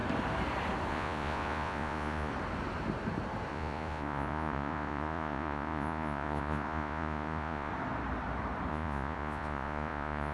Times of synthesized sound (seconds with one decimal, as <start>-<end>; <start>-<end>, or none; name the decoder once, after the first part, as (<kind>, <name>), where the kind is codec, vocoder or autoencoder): 0.9-2.3 (vocoder, Vocos); 3.5-7.7; 8.7-10.3